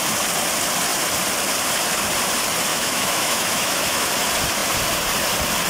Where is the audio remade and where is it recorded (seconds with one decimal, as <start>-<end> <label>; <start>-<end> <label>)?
0.0-2.7 recorded; 2.7-4.1 remade; 4.1-5.7 recorded